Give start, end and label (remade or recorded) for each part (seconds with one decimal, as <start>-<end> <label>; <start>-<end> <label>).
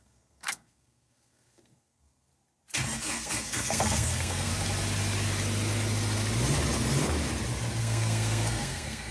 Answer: 0.0-2.3 remade; 2.3-3.0 recorded; 3.0-4.5 remade; 4.5-7.8 recorded; 7.8-9.1 remade